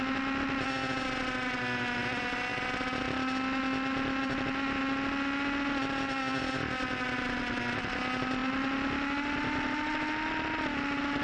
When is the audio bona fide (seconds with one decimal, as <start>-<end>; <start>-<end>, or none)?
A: 0.0-11.2